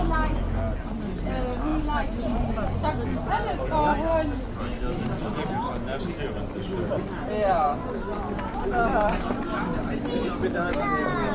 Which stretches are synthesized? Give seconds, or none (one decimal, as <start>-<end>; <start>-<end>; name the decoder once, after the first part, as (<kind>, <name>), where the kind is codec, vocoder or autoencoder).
none

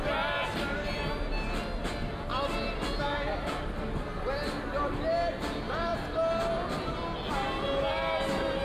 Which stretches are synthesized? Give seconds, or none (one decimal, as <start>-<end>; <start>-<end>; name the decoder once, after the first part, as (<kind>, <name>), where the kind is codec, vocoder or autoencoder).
none

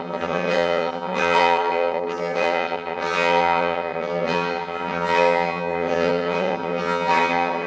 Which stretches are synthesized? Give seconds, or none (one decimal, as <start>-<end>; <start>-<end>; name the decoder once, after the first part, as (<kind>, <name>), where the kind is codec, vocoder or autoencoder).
0.0-7.7 (vocoder, HiFi-GAN)

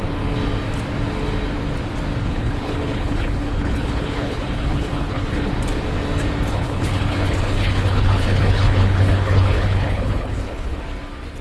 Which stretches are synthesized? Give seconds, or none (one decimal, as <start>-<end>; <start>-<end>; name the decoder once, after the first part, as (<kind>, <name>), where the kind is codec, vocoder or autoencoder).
2.2-5.5 (codec, HILCodec); 6.5-10.8

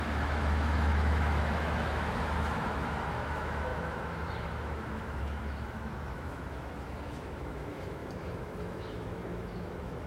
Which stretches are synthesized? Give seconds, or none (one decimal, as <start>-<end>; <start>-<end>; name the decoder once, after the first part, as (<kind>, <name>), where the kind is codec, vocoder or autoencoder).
0.0-10.1 (autoencoder, DAC-VAE)

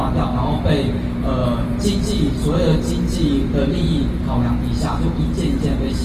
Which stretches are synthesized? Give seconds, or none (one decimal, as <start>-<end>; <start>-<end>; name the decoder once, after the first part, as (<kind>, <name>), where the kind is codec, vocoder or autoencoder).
none